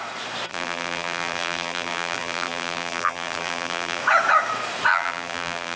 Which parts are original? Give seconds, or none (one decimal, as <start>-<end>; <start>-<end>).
0.0-0.5; 4.0-4.9